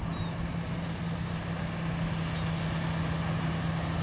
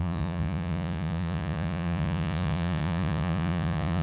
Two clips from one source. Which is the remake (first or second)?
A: second